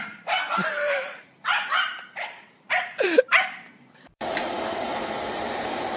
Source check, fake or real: fake